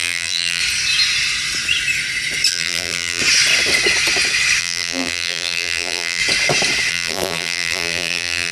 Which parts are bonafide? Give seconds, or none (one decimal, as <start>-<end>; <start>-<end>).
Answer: 0.6-2.5; 3.2-4.6; 6.2-6.9